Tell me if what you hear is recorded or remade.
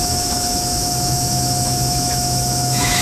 remade